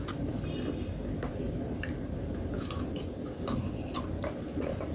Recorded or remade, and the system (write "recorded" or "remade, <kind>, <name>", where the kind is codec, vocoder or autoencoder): recorded